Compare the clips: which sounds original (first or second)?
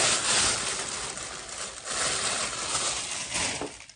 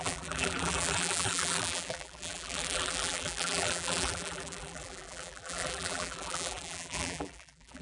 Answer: first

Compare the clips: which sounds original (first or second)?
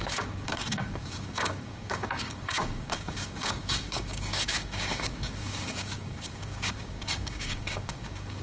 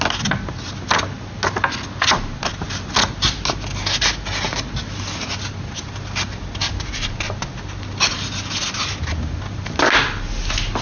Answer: second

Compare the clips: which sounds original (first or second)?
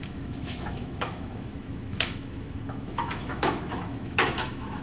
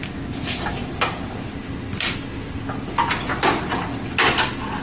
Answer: second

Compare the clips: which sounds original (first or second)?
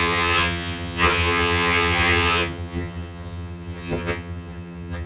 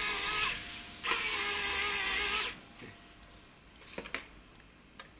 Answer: second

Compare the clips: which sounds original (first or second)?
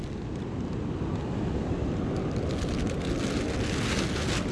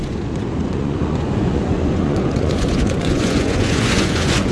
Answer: first